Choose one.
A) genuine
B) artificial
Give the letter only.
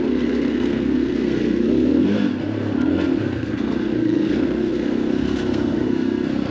B